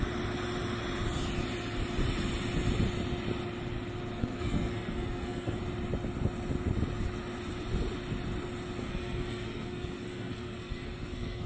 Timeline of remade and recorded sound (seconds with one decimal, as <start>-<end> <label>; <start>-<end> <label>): 0.0-4.2 recorded; 4.2-5.6 remade; 5.6-8.8 recorded; 8.8-11.5 remade